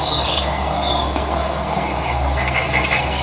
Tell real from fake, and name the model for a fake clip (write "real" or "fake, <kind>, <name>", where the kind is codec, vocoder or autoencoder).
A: fake, codec, SNAC